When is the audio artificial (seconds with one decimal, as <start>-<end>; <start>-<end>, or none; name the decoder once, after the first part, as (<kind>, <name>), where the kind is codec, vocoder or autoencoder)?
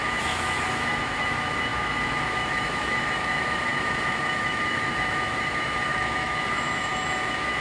0.0-7.6 (autoencoder, DAC-VAE)